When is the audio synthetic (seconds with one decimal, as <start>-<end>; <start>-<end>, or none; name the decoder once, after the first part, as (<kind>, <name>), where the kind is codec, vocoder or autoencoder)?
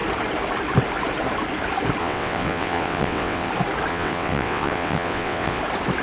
2.0-3.5 (vocoder, WaveNeXt); 3.9-5.6